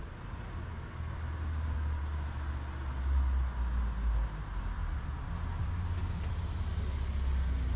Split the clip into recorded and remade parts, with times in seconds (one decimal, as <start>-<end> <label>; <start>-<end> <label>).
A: 0.0-7.8 recorded